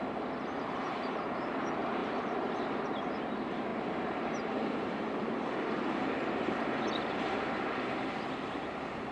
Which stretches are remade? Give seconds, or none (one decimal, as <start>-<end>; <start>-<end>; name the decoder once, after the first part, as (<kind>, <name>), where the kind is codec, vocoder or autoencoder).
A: 0.0-9.1 (vocoder, BigVGAN v2)